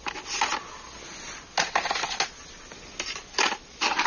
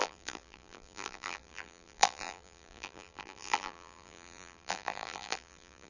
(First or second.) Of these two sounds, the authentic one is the first